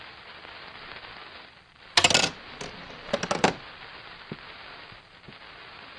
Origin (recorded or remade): recorded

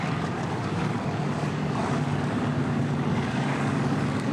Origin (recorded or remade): remade